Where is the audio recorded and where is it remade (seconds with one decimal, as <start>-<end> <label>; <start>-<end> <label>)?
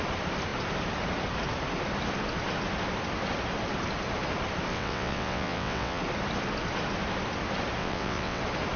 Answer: 0.0-4.7 recorded; 4.7-6.0 remade; 6.0-7.8 recorded; 7.8-8.4 remade; 8.4-8.8 recorded